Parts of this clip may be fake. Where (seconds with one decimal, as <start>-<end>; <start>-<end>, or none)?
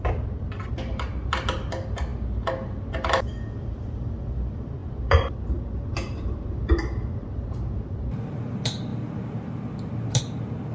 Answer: 4.8-5.4; 8.9-10.2